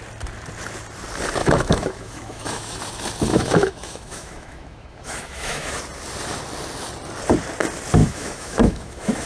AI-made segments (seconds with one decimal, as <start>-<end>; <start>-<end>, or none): 1.4-2.8; 3.3-5.7; 8.0-9.3